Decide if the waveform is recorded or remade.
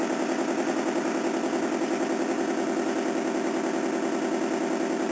recorded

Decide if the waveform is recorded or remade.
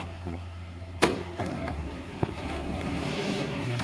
remade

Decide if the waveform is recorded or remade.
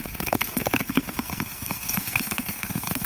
remade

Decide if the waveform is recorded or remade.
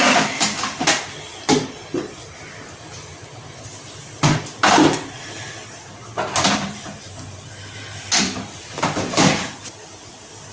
recorded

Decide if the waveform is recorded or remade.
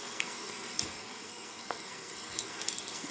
remade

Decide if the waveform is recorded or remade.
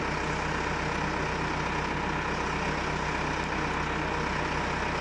recorded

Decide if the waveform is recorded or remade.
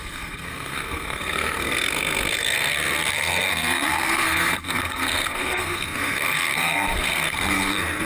remade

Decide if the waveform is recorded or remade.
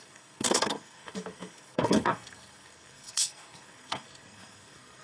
remade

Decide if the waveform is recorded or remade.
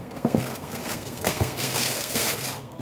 remade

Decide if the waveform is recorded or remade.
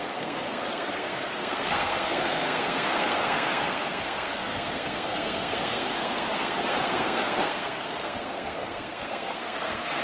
remade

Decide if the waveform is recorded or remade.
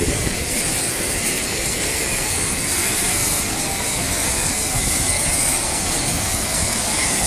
remade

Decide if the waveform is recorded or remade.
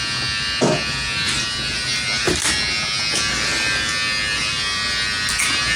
recorded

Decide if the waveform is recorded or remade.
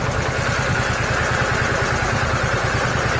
recorded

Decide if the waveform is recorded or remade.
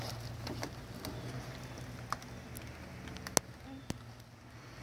recorded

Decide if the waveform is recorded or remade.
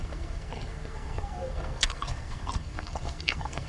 remade